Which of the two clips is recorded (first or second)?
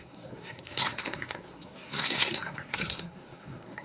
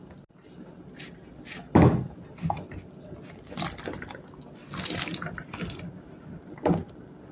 second